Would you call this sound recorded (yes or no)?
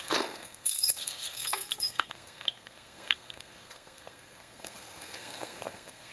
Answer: no